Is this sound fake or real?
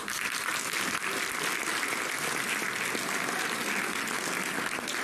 real